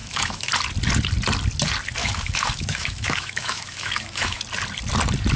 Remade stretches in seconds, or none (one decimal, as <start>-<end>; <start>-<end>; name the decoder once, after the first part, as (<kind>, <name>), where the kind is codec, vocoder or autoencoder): 0.0-0.5 (autoencoder, DAC-VAE); 2.0-4.4